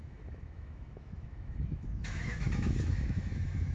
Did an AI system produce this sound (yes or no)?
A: yes